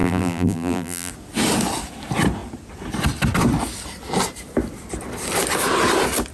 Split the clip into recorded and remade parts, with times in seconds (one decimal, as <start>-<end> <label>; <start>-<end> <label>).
0.0-1.1 remade; 1.1-6.3 recorded